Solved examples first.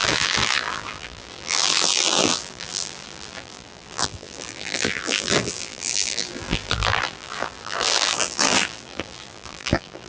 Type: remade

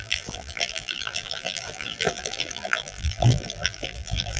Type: remade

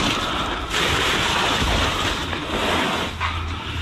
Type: recorded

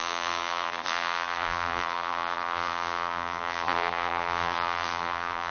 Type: remade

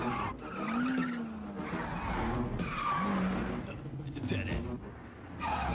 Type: recorded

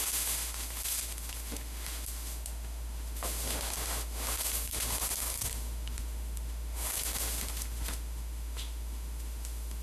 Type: remade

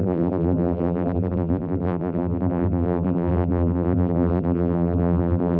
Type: remade